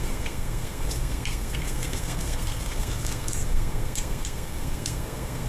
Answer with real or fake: fake